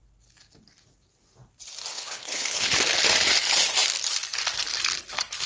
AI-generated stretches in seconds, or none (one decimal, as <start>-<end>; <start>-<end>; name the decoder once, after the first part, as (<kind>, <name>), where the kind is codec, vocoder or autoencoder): 1.9-2.7 (codec, HILCodec)